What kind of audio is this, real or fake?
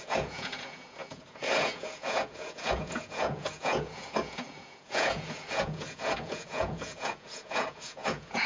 fake